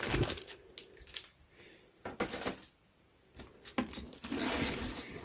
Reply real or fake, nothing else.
real